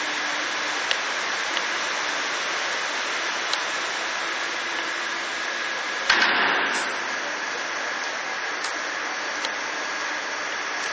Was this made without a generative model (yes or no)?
yes